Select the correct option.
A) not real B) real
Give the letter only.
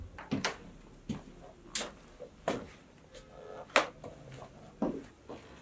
B